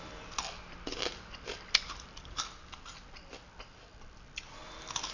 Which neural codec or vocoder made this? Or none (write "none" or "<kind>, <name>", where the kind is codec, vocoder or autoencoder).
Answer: none